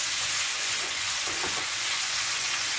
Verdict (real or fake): fake